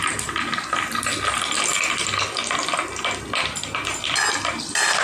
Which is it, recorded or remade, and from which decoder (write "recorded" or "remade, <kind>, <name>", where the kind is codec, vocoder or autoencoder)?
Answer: recorded